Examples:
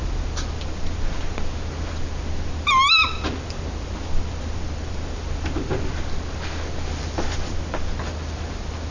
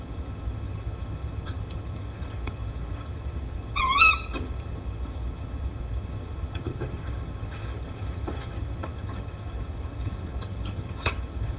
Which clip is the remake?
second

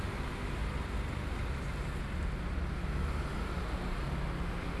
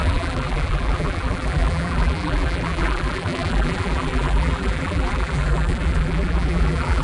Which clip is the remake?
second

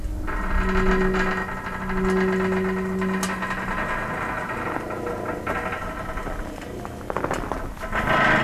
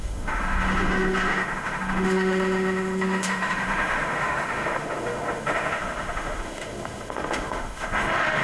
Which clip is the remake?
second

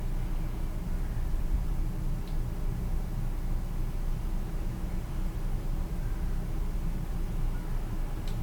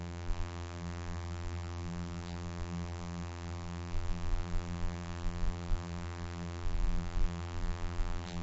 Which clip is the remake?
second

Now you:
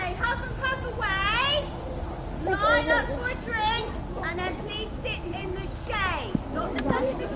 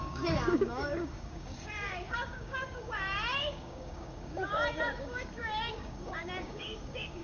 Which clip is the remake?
second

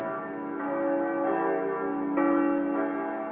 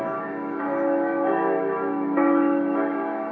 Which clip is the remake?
second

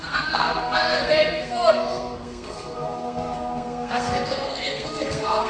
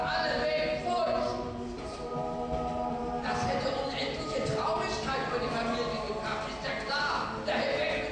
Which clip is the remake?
first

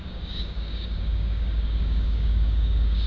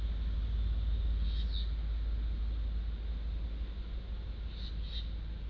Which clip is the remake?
first